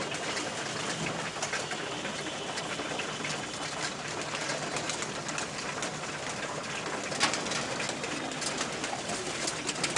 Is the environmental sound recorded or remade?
recorded